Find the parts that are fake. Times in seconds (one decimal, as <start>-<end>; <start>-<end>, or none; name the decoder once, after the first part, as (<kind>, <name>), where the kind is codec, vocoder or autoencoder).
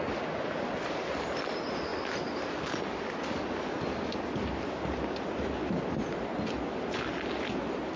none